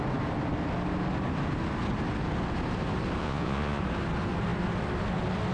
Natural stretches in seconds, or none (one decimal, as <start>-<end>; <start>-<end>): 0.0-3.2; 3.8-5.5